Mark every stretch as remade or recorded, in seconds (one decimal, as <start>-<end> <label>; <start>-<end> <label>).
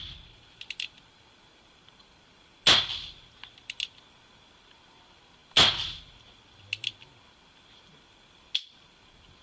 0.0-9.4 recorded